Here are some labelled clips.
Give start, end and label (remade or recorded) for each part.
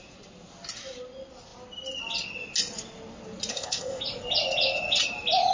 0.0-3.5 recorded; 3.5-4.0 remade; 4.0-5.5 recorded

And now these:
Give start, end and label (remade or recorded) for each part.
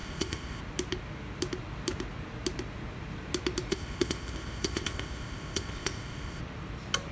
0.0-0.6 remade; 0.6-3.7 recorded; 3.7-6.4 remade; 6.4-7.1 recorded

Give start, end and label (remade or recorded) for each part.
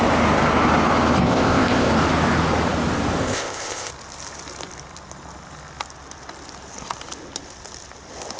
0.0-1.2 recorded; 1.2-1.9 remade; 1.9-3.2 recorded; 3.2-3.9 remade; 3.9-8.4 recorded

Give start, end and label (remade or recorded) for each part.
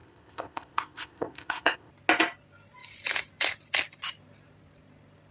0.0-1.9 remade; 1.9-5.3 recorded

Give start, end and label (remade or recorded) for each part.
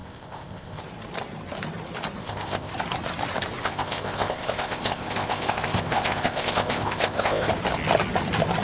0.0-0.8 remade; 0.8-2.2 recorded; 2.2-2.7 remade; 2.7-3.6 recorded; 3.6-7.5 remade; 7.5-8.6 recorded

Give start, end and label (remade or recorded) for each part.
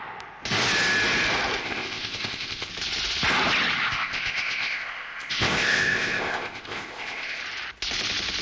0.0-1.6 recorded; 1.6-2.7 remade; 2.7-3.9 recorded; 3.9-7.4 remade; 7.4-8.4 recorded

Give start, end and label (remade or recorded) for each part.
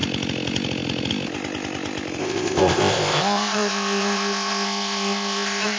0.0-2.2 recorded; 2.2-5.8 remade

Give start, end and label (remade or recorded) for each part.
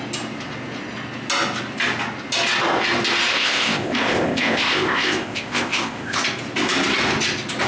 0.0-3.3 recorded; 3.3-6.2 remade; 6.2-7.7 recorded